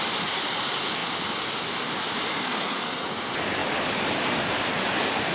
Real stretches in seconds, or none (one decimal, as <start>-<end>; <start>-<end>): 0.0-2.3; 3.0-5.3